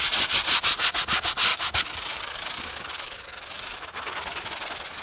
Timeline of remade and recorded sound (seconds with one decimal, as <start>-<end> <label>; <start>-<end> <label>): 0.0-1.5 recorded; 1.5-4.5 remade; 4.5-5.0 recorded